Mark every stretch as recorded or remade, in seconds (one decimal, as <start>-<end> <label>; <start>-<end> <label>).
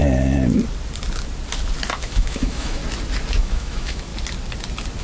0.0-2.0 recorded; 2.0-2.8 remade; 2.8-3.4 recorded; 3.4-4.1 remade; 4.1-5.0 recorded